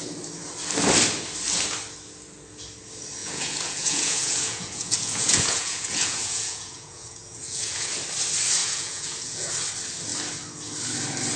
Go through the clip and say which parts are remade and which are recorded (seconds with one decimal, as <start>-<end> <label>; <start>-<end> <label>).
0.0-3.2 recorded; 3.2-7.9 remade; 7.9-8.6 recorded; 8.6-9.5 remade; 9.5-11.4 recorded